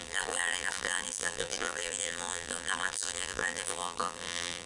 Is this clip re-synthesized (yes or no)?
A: yes